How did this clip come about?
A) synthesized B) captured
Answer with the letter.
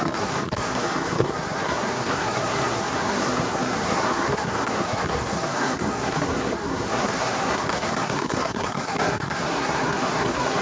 A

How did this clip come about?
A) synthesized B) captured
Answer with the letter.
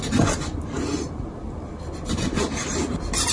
B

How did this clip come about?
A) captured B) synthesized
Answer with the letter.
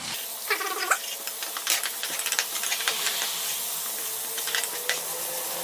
A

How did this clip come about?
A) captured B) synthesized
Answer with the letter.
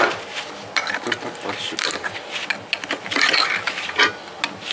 A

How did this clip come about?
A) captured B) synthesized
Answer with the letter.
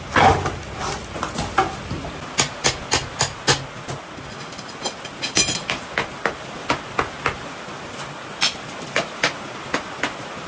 A